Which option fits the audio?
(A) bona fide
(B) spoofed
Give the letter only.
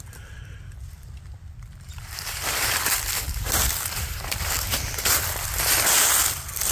B